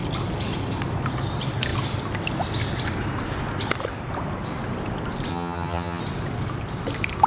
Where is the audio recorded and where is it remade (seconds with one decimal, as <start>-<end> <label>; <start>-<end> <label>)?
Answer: 0.0-5.3 recorded; 5.3-6.0 remade; 6.0-7.3 recorded